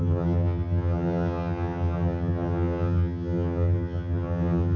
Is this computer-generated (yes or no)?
yes